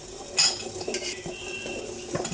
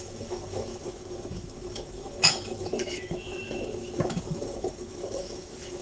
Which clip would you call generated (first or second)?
second